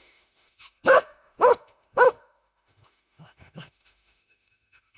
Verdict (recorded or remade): remade